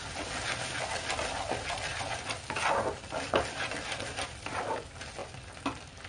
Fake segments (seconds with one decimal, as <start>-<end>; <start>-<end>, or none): none